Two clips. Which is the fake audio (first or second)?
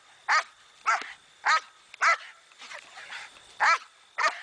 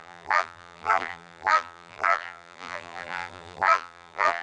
second